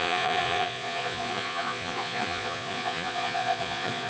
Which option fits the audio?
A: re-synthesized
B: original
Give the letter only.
A